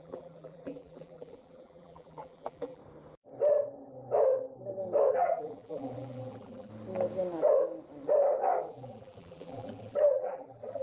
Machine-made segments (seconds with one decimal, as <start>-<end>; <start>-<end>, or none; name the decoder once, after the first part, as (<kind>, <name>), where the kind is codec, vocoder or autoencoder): 0.0-2.8 (vocoder, BigVGAN v2); 5.1-6.7; 8.7-10.8